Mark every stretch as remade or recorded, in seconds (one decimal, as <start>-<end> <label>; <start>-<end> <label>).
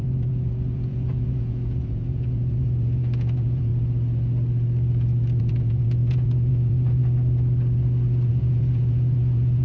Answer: 0.0-3.7 remade; 3.7-5.4 recorded; 5.4-7.0 remade; 7.0-8.3 recorded; 8.3-9.6 remade